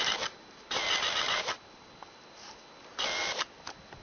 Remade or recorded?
recorded